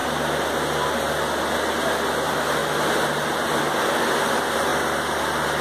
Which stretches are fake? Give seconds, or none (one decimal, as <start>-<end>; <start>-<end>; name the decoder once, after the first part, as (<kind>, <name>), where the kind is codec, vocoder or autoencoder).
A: none